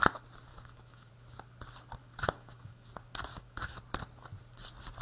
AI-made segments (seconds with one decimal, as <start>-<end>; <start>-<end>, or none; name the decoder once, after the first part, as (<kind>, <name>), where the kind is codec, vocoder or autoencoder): 0.5-1.1 (autoencoder, DAC-VAE); 2.0-2.9; 3.3-3.8